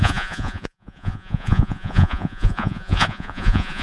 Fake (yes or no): yes